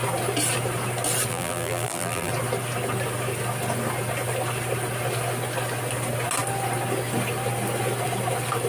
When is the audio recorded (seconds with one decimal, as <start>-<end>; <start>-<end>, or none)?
0.0-1.3; 2.3-8.7